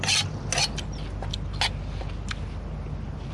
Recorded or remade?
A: recorded